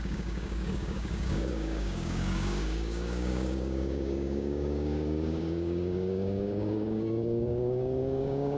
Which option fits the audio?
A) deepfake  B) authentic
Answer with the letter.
A